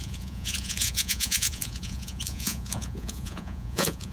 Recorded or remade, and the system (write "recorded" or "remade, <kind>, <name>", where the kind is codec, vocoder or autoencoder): remade, vocoder, Vocos